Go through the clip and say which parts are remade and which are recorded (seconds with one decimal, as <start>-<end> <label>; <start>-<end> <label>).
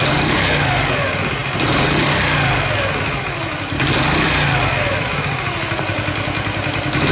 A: 0.0-7.1 recorded